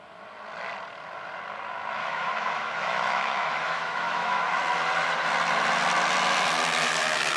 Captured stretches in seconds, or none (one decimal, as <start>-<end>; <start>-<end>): 0.0-2.0; 4.4-7.4

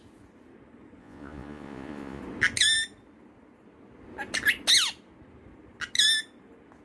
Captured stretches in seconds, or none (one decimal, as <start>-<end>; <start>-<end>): 0.0-1.0; 2.2-6.8

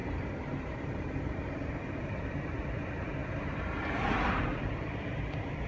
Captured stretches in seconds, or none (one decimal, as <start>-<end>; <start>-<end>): none